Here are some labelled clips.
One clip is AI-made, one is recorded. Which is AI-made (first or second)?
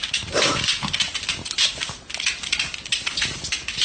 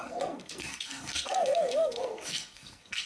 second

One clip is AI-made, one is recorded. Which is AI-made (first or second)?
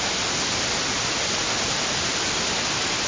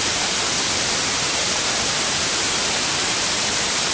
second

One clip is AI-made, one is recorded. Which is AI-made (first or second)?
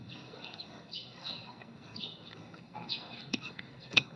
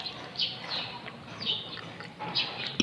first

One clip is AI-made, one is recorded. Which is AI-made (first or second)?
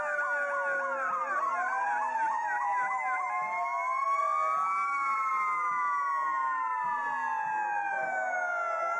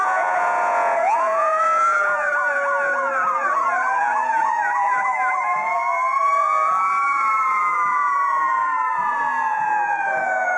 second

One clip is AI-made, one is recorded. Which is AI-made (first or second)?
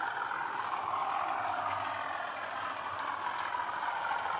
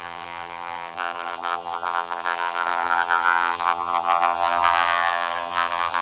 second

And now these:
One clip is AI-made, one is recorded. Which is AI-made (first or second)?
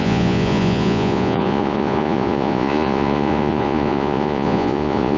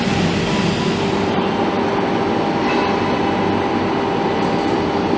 first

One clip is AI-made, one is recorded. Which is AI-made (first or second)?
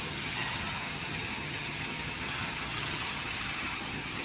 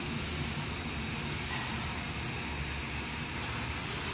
first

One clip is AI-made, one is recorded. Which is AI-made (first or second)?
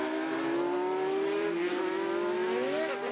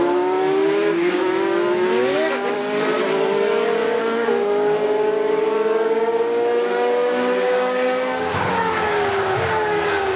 second